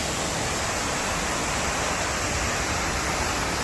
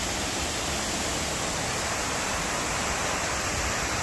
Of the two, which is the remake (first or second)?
second